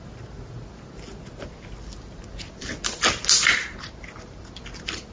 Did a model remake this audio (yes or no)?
no